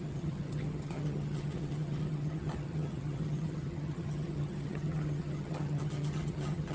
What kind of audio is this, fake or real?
fake